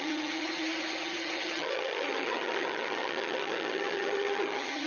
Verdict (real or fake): fake